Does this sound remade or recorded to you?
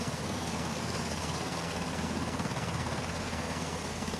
remade